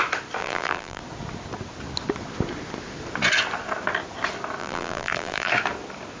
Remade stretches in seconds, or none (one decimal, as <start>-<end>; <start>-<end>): 0.4-1.0; 4.6-5.5